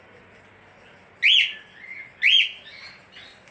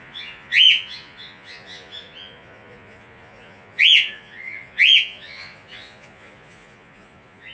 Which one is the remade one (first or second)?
second